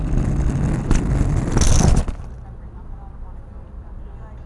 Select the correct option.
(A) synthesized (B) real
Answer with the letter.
B